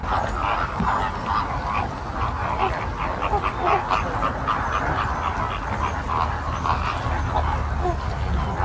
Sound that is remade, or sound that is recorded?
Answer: recorded